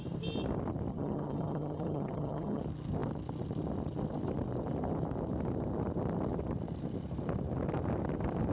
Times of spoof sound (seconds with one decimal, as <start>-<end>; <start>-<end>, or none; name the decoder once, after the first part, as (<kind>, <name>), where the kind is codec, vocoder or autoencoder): 0.9-2.6 (vocoder, HiFi-GAN)